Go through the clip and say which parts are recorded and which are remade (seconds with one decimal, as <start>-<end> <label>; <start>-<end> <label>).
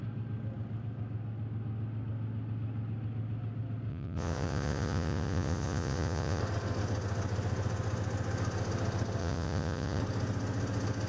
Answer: 0.0-3.9 recorded; 3.9-6.4 remade; 6.4-9.2 recorded; 9.2-10.0 remade; 10.0-11.1 recorded